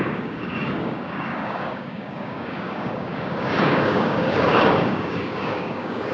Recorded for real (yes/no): no